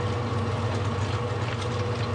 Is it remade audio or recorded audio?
recorded